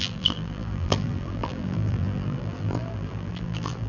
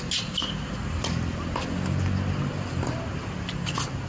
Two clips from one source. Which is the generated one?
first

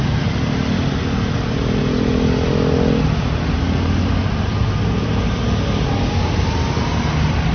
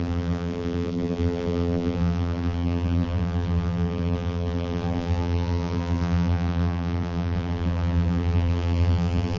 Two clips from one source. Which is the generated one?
second